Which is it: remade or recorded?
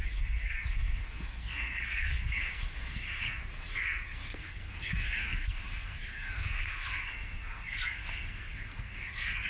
remade